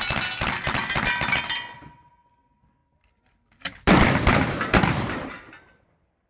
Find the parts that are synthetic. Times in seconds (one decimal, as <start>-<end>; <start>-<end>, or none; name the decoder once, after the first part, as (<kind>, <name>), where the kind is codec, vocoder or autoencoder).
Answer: 2.8-6.3 (vocoder, BigVGAN v2)